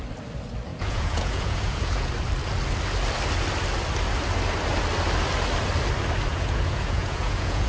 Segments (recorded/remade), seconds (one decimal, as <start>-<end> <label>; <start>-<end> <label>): 0.0-0.7 recorded; 0.7-2.1 remade; 2.1-6.3 recorded; 6.3-7.7 remade